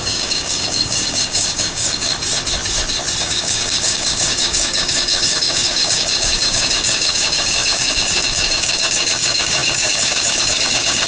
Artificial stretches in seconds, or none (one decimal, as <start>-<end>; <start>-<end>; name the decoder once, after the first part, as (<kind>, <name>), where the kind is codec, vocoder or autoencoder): 0.0-2.1 (codec, DAC); 3.2-11.1